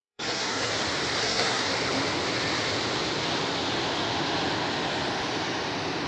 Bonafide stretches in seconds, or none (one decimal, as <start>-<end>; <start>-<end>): 0.7-1.2; 1.7-6.1

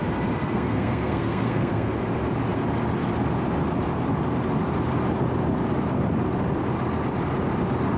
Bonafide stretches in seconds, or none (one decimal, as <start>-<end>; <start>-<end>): 0.0-0.4; 1.9-8.0